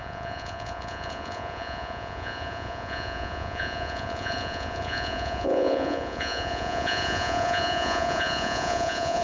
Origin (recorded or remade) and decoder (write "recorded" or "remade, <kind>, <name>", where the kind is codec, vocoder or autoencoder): remade, vocoder, Vocos